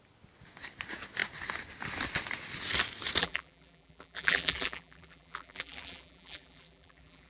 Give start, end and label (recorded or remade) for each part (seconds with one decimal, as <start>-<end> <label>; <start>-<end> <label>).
0.0-3.2 recorded; 3.2-7.3 remade